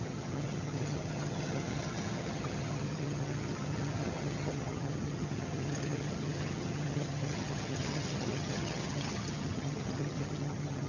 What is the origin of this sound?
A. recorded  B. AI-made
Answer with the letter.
B